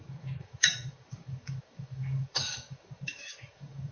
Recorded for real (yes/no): no